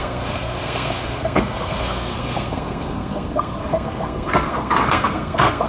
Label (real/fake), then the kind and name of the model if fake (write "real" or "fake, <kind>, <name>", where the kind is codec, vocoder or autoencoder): fake, codec, SNAC